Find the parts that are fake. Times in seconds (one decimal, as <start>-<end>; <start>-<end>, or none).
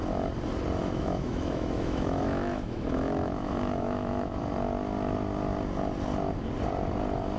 0.8-4.4